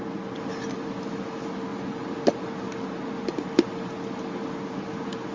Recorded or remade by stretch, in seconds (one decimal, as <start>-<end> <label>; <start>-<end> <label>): 0.0-5.3 recorded

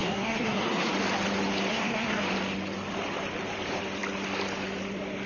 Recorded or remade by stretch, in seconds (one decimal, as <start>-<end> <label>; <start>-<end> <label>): 0.0-0.9 remade; 0.9-1.7 recorded; 1.7-2.2 remade; 2.2-5.3 recorded

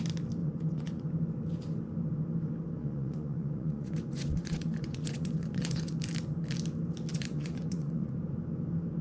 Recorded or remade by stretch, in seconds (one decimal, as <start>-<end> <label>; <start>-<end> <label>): 0.0-0.4 recorded; 0.4-1.1 remade; 1.1-2.8 recorded; 2.8-5.9 remade; 5.9-7.1 recorded; 7.1-8.1 remade; 8.1-9.0 recorded

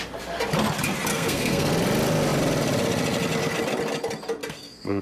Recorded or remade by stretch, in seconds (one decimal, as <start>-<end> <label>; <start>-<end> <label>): 0.0-1.1 recorded; 1.1-1.7 remade; 1.7-4.4 recorded; 4.4-5.0 remade